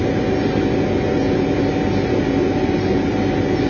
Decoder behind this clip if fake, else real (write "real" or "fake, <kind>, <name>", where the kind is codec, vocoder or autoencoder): real